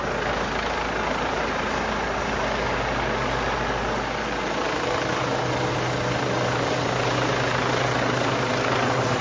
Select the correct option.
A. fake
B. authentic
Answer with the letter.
B